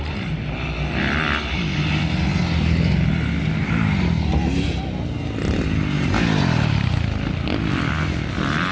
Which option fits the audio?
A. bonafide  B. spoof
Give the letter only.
A